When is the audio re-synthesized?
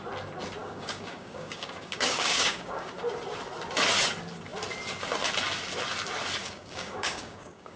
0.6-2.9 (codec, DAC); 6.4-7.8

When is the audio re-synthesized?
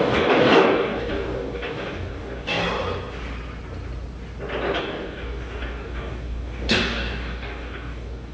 0.0-2.6 (codec, DAC); 4.8-8.3